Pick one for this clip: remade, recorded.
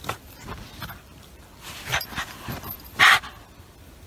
remade